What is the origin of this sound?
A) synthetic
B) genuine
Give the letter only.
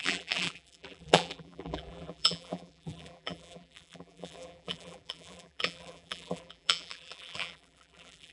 A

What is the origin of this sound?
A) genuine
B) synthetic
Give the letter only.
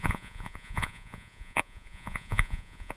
B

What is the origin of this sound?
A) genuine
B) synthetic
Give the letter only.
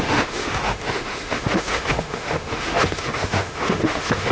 B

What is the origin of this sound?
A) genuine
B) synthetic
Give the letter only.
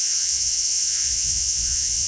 B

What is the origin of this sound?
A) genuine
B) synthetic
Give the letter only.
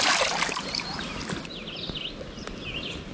A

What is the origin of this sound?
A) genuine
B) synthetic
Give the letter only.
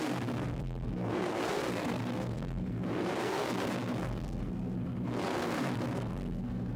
B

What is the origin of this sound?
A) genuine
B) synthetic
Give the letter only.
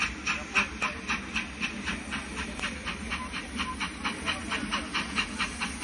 A